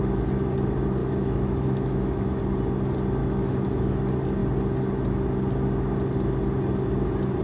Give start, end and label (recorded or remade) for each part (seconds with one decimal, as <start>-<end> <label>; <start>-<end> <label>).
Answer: 0.0-1.0 recorded; 1.0-2.4 remade; 2.4-3.2 recorded; 3.2-4.0 remade; 4.0-7.4 recorded